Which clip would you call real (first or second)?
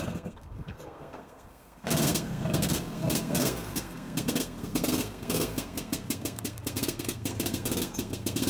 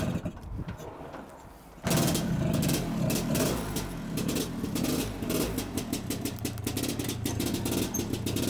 second